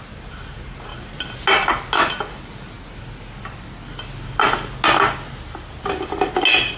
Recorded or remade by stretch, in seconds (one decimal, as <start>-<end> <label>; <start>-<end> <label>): 0.0-6.8 recorded